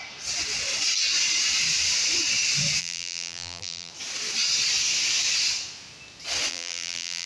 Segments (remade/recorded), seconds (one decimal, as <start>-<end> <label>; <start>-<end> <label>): 0.0-2.8 recorded; 2.8-3.9 remade; 3.9-6.5 recorded; 6.5-7.3 remade